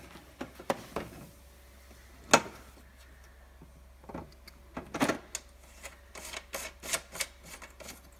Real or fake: real